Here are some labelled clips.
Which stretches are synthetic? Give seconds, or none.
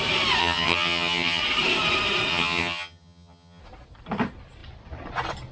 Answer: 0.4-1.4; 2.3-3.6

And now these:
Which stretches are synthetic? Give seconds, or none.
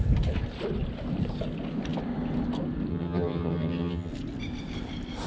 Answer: 2.9-4.1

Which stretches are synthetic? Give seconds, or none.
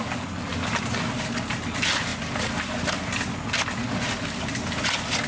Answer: none